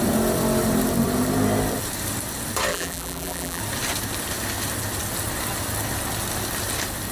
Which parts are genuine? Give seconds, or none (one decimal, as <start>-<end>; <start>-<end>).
0.0-2.7; 3.6-7.1